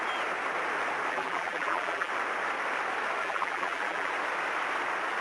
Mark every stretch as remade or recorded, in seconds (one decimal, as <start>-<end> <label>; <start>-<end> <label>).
0.0-1.1 recorded; 1.1-2.1 remade; 2.1-3.2 recorded; 3.2-4.1 remade; 4.1-5.2 recorded